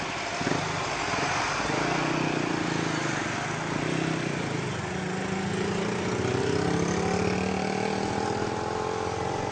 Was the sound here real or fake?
real